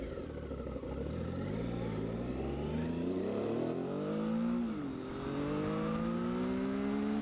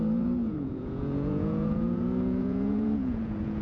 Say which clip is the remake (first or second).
second